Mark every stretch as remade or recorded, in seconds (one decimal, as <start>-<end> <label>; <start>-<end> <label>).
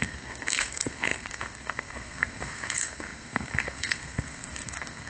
0.0-5.1 remade